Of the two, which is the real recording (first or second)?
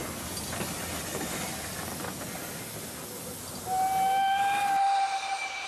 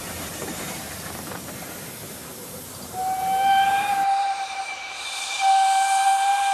first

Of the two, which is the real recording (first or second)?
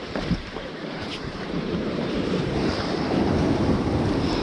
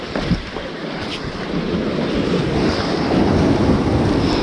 second